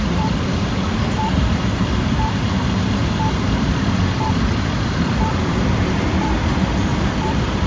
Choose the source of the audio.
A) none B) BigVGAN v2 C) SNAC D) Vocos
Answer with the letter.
B